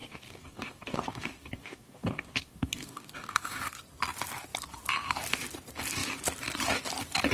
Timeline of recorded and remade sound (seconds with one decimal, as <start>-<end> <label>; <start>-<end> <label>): 0.0-3.6 remade; 3.6-7.3 recorded